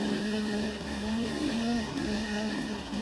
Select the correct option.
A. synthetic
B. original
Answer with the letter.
A